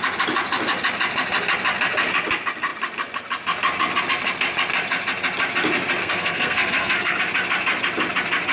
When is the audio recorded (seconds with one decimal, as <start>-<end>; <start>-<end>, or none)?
0.0-6.0; 7.2-8.5